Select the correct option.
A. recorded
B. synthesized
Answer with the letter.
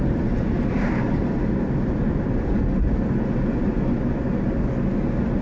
A